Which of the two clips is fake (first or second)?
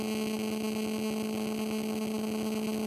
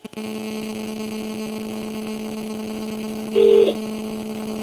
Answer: second